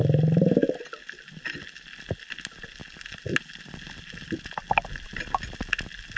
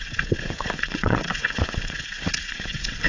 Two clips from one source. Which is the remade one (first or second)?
second